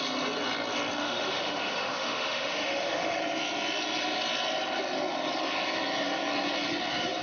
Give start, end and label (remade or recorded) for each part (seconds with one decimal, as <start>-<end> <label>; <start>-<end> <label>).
0.0-1.0 recorded; 1.0-3.2 remade; 3.2-7.2 recorded